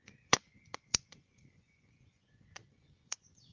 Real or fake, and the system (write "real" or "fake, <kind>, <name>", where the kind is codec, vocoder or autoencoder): fake, vocoder, Vocos